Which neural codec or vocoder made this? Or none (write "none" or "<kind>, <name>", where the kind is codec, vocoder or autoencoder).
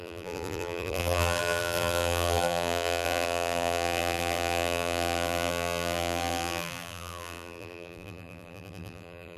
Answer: vocoder, BigVGAN v2